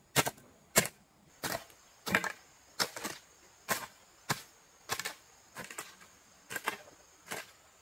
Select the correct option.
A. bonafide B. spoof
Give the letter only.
A